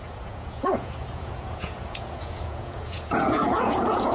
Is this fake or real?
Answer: fake